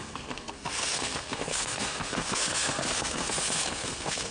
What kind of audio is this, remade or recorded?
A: remade